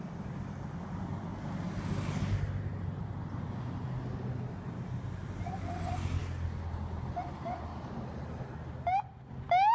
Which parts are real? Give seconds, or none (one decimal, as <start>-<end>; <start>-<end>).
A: 0.0-2.2; 3.1-9.7